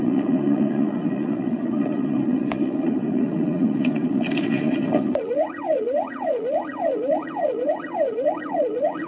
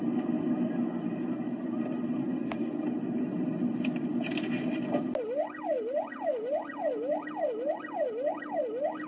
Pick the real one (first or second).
second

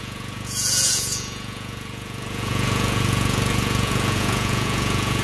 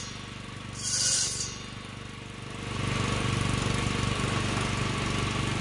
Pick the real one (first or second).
second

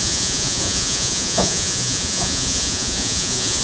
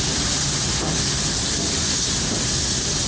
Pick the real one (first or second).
second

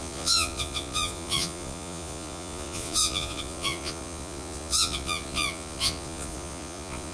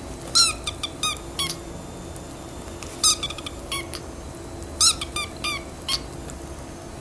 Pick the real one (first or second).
second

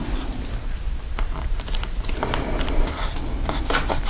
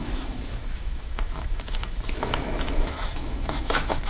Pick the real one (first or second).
first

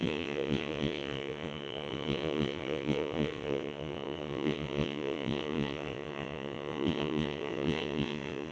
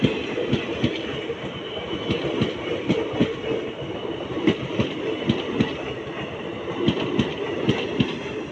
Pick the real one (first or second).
second